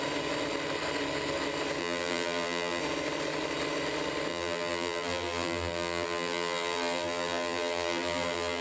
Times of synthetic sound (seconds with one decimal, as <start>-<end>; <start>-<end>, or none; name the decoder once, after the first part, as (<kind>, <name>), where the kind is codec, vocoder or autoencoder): 1.8-2.8 (vocoder, BigVGAN v2); 4.3-8.6